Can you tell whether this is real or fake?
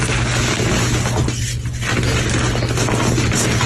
real